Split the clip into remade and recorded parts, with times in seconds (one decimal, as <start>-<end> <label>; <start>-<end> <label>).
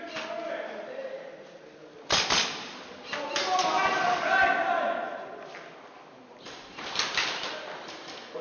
0.0-8.4 recorded